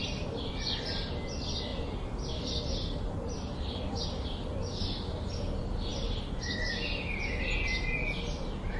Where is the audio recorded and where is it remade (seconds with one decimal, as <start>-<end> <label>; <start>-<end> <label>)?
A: 0.0-8.8 recorded